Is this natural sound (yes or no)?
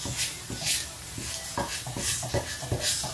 yes